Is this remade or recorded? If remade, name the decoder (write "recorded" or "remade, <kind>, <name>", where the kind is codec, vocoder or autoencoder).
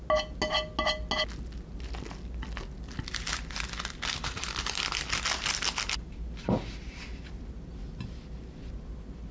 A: recorded